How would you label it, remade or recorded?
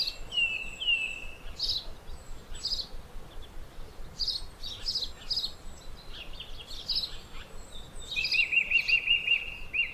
recorded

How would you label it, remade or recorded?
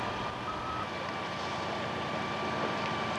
remade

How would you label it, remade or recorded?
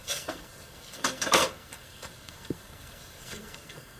remade